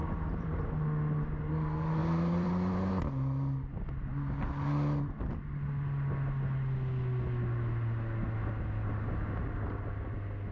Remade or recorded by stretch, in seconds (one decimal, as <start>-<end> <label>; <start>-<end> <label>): 0.0-0.7 remade; 0.7-2.0 recorded; 2.0-2.9 remade; 2.9-10.5 recorded